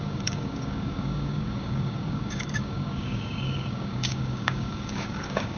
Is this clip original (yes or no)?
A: no